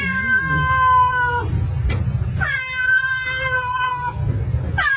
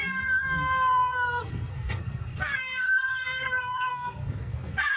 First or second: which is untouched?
first